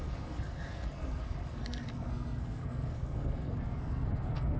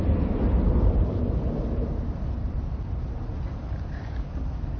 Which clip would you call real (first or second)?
second